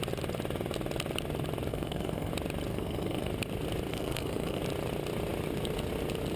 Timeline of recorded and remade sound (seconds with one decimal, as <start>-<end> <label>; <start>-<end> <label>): 0.0-1.7 recorded; 1.7-2.3 remade; 2.3-2.7 recorded; 2.7-3.3 remade; 3.3-3.9 recorded; 3.9-4.6 remade; 4.6-6.4 recorded